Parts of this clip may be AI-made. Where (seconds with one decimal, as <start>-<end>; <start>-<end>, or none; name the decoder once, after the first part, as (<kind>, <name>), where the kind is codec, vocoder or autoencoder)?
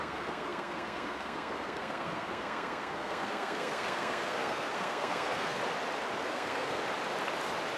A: 0.0-5.6 (codec, SNAC); 6.2-6.8